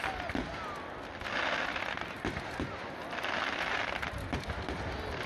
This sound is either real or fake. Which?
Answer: real